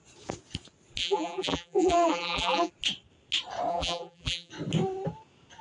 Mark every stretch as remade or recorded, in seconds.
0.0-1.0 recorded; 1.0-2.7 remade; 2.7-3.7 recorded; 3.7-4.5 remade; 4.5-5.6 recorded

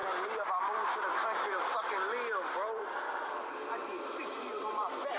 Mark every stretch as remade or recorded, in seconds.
0.0-3.1 recorded; 3.1-5.2 remade